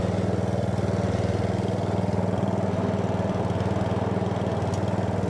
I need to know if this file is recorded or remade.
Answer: recorded